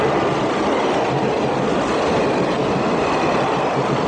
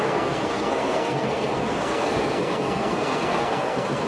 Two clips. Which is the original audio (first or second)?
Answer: first